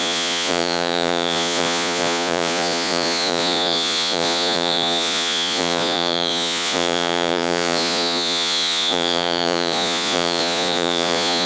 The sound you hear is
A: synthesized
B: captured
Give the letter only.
A